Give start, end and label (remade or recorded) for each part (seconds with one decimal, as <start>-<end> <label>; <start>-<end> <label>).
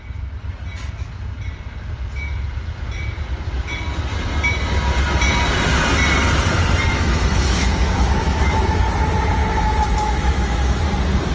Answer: 0.0-6.9 recorded; 6.9-8.8 remade; 8.8-9.4 recorded; 9.4-10.8 remade; 10.8-11.3 recorded